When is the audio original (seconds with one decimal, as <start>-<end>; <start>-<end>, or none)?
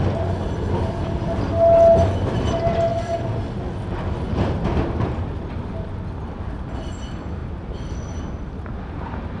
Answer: 0.0-9.4